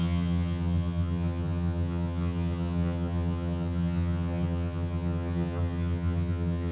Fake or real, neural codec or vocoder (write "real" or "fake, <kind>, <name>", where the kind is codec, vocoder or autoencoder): fake, vocoder, HiFi-GAN